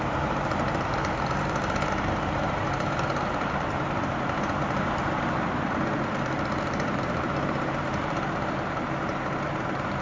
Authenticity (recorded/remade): remade